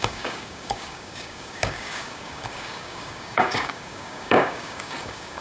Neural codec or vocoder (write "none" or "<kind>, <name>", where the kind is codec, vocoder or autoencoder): codec, DAC